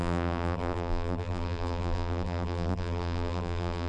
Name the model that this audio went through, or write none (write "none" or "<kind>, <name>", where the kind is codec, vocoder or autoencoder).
vocoder, BigVGAN v2